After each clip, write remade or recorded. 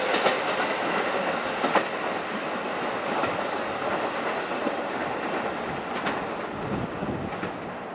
recorded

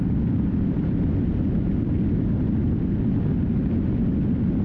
recorded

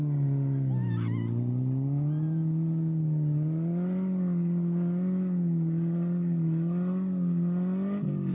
recorded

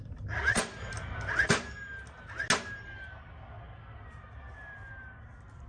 recorded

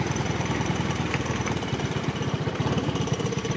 remade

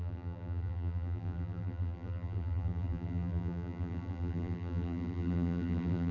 remade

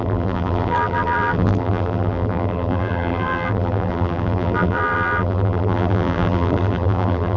remade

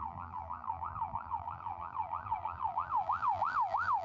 remade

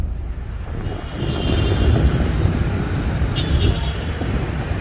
recorded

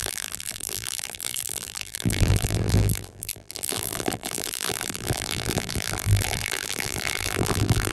remade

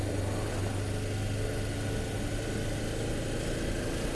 recorded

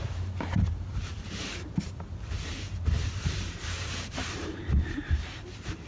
remade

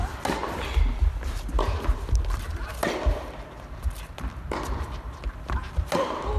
recorded